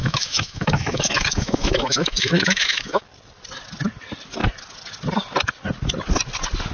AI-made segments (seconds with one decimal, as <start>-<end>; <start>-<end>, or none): 0.0-3.0